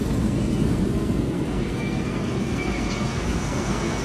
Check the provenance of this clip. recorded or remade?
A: remade